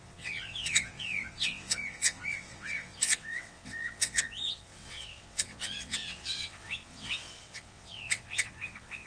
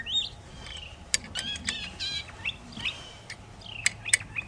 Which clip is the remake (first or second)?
first